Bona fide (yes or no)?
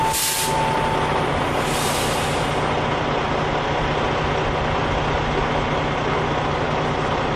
yes